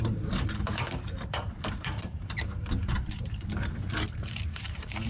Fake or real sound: fake